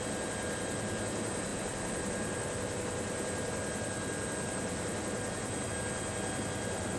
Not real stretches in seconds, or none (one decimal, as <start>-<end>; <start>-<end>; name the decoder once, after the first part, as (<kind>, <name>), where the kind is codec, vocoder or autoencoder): none